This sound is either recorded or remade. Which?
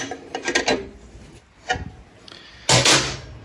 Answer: recorded